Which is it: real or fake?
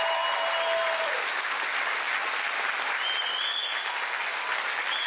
real